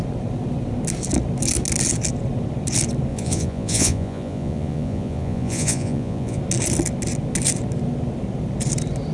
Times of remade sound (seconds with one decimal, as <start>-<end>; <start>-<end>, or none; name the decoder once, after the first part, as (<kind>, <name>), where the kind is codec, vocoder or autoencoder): 3.1-6.4 (vocoder, Vocos)